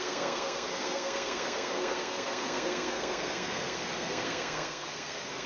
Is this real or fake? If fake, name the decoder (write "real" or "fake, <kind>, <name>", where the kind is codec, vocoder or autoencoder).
fake, codec, SNAC